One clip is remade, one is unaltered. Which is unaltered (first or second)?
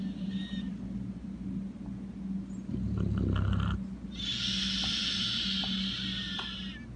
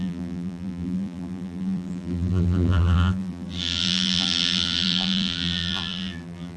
first